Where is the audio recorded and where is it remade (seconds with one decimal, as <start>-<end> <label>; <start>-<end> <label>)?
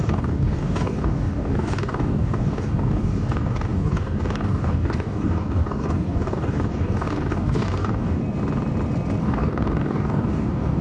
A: 0.0-8.2 remade; 8.2-9.2 recorded; 9.2-10.8 remade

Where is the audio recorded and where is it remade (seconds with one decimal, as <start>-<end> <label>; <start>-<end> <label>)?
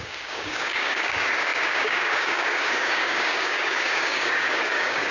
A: 0.0-5.1 remade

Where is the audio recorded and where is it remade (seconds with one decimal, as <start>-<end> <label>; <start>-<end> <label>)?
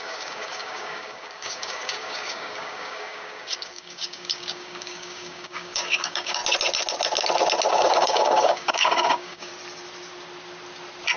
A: 0.0-6.4 remade; 6.4-7.7 recorded; 7.7-9.5 remade; 9.5-11.2 recorded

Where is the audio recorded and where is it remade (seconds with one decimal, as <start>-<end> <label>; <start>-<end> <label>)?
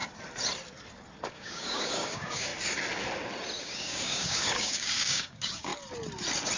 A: 0.0-1.3 recorded; 1.3-2.5 remade; 2.5-3.6 recorded; 3.6-5.7 remade; 5.7-6.6 recorded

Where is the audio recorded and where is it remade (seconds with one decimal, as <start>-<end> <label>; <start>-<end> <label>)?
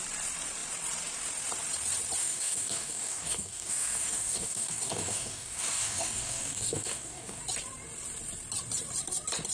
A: 0.0-2.2 recorded; 2.2-7.4 remade; 7.4-9.5 recorded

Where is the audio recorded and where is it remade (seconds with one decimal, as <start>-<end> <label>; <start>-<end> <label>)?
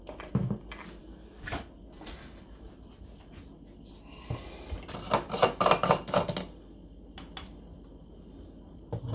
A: 0.0-1.0 recorded; 1.0-1.6 remade; 1.6-9.1 recorded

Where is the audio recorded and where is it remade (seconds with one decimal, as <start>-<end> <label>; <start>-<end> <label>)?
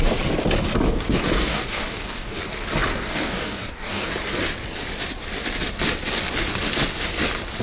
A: 0.0-1.5 recorded; 1.5-2.4 remade; 2.4-2.9 recorded; 2.9-4.1 remade; 4.1-7.6 recorded